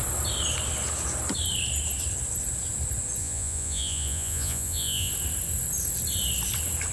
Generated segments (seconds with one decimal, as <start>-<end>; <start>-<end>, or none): 3.2-5.1

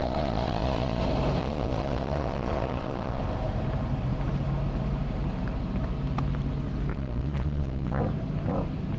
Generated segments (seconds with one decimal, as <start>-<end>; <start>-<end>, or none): 0.0-1.0; 1.4-3.2; 6.9-8.0

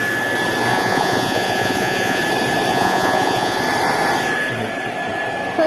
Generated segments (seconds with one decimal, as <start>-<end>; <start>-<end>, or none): 0.7-2.2; 2.7-3.6

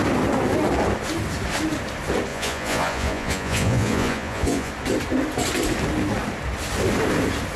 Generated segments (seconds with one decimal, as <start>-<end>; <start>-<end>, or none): 2.3-4.7